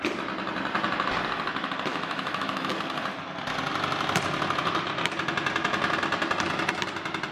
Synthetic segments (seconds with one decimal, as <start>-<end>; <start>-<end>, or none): 1.9-2.7